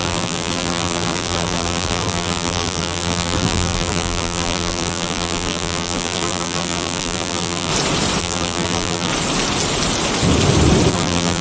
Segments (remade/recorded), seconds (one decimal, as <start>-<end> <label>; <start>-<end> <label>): 0.0-7.7 remade; 7.7-8.2 recorded; 8.2-9.1 remade; 9.1-10.9 recorded; 10.9-11.4 remade